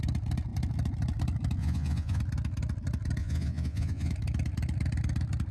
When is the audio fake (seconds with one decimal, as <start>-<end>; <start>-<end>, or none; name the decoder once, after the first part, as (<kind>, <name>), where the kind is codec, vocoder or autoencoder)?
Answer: 1.6-2.2 (vocoder, Vocos); 3.2-4.1